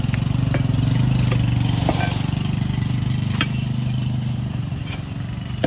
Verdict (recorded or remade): recorded